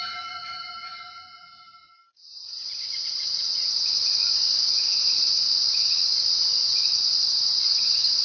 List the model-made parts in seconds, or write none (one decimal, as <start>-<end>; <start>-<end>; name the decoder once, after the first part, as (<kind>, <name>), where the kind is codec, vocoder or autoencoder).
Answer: 0.0-4.2 (vocoder, Vocos); 4.7-6.7; 7.4-8.2